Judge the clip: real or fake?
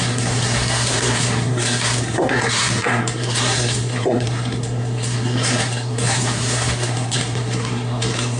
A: fake